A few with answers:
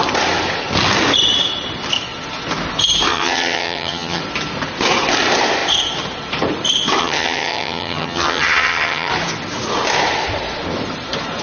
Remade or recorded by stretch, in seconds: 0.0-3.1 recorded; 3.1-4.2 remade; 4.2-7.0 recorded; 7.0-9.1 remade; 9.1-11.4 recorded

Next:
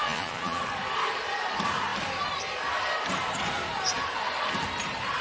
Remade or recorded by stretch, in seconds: 0.0-0.6 remade; 0.6-5.2 recorded

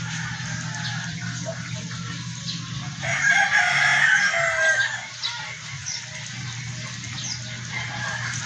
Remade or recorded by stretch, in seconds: 0.0-8.5 recorded

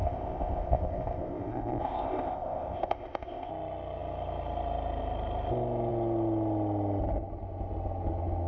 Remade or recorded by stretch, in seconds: 0.0-3.5 remade; 3.5-8.5 recorded

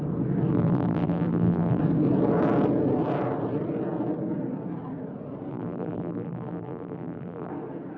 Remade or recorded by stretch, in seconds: 0.0-0.5 recorded; 0.5-1.8 remade; 1.8-5.5 recorded; 5.5-7.5 remade; 7.5-8.0 recorded